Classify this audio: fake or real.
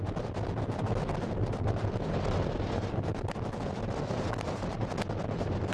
real